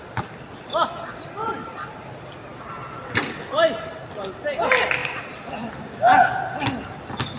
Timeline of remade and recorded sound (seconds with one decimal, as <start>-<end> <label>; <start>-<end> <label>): 0.0-5.0 recorded; 5.0-5.7 remade; 5.7-7.4 recorded